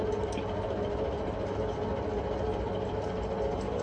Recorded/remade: recorded